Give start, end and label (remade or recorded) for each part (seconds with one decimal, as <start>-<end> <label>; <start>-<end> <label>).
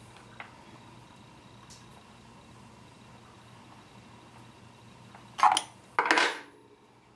0.0-7.2 recorded